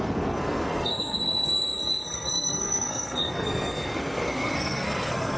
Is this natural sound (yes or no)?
no